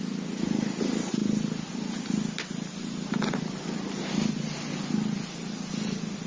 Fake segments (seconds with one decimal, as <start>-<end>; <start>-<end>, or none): none